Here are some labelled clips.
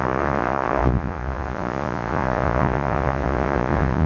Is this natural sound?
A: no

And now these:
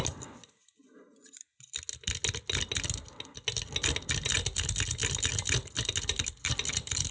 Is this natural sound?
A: yes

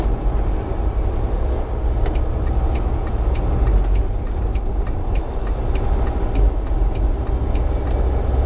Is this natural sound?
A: yes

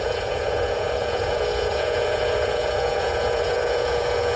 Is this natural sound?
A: no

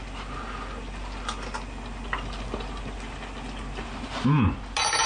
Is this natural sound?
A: yes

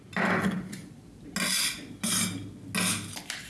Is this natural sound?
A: yes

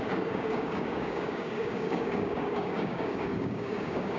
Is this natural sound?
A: no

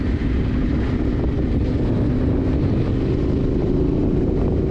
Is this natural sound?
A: yes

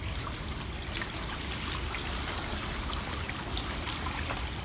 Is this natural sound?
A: yes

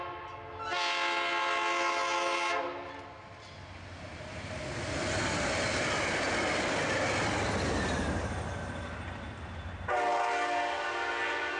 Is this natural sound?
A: yes